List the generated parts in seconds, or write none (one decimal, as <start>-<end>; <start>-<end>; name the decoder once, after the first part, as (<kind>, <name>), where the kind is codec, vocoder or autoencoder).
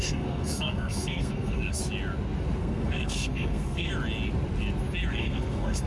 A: 0.0-1.8 (codec, SNAC); 2.6-3.9; 5.1-5.9